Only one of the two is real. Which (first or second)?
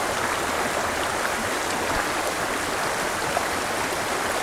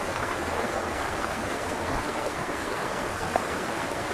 first